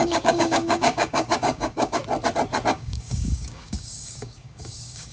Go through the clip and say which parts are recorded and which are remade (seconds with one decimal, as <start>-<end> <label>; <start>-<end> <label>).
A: 0.0-2.0 remade; 2.0-2.7 recorded; 2.7-5.1 remade